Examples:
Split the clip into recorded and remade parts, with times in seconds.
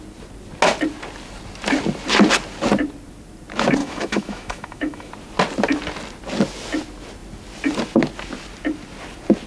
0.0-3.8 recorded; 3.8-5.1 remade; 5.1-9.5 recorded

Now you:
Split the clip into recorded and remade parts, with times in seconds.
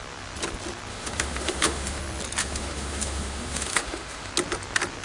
0.0-0.9 recorded; 0.9-2.0 remade; 2.0-2.4 recorded; 2.4-4.3 remade; 4.3-5.0 recorded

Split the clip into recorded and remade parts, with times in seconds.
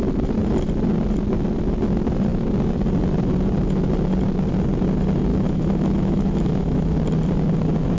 0.0-5.3 recorded; 5.3-6.9 remade; 6.9-8.0 recorded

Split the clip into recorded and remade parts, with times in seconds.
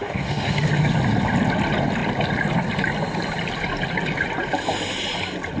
0.0-0.7 remade; 0.7-5.6 recorded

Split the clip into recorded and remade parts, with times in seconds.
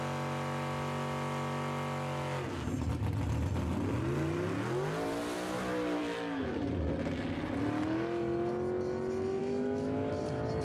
0.0-9.4 recorded; 9.4-10.1 remade; 10.1-10.6 recorded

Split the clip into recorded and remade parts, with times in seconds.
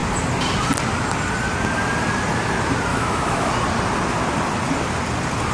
0.0-2.9 recorded; 2.9-3.5 remade; 3.5-5.5 recorded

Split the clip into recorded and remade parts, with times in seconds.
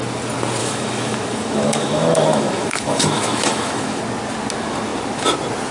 0.0-0.6 recorded; 0.6-4.0 remade; 4.0-5.7 recorded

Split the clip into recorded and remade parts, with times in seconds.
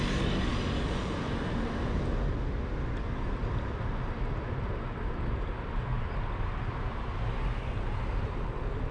0.0-8.9 recorded